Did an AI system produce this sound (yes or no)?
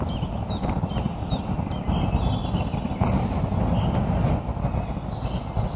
no